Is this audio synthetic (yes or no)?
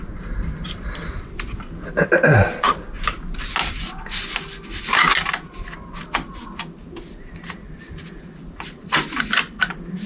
no